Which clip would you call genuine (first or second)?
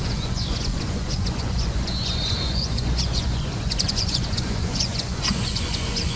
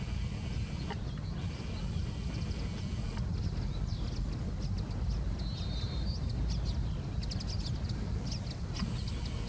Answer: second